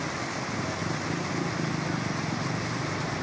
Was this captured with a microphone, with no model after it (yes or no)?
yes